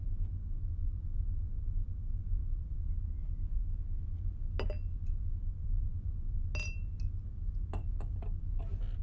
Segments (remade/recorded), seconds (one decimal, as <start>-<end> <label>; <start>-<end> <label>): 0.0-9.0 recorded